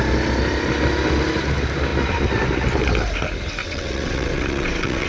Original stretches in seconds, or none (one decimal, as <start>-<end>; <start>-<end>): 0.0-3.6